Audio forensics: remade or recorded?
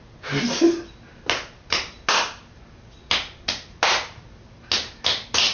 recorded